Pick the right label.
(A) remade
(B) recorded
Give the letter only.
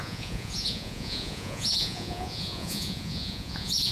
A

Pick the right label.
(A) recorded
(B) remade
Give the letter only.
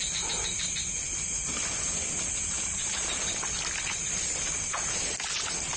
A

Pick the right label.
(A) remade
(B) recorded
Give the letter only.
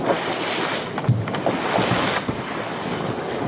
B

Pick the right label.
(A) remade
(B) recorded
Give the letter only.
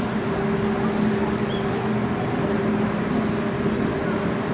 B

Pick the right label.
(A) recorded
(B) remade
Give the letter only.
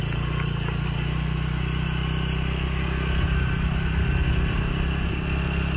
A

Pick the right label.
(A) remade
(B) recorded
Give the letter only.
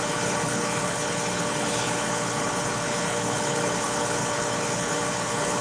A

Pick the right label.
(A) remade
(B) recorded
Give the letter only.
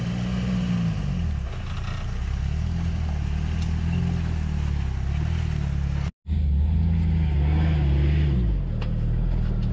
B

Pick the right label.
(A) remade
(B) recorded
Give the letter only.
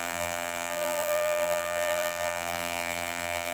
A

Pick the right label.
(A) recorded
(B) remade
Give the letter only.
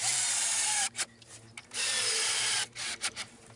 B